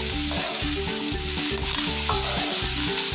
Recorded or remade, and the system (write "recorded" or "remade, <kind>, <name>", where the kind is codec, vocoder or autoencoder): recorded